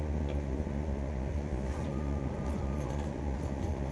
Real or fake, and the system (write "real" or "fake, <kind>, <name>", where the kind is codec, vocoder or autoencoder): fake, vocoder, Vocos